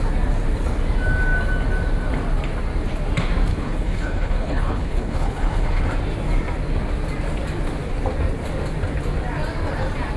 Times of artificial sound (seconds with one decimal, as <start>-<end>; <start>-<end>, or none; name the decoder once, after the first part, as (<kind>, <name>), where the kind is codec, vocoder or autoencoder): 3.5-5.8 (codec, HILCodec)